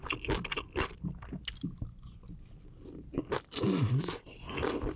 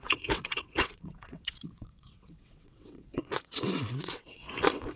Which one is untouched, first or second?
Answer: first